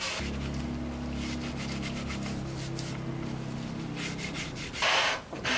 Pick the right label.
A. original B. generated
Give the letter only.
A